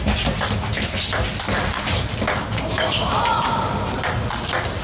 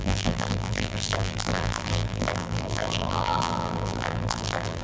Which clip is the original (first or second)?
first